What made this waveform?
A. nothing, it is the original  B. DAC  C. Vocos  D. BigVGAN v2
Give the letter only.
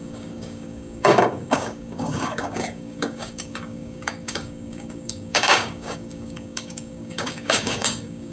B